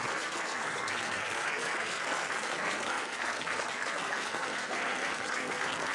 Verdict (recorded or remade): remade